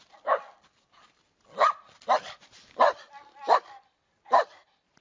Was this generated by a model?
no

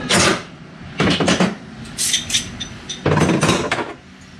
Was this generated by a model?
no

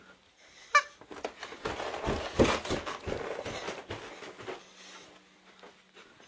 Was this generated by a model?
no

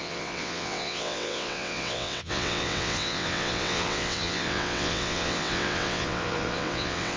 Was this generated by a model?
yes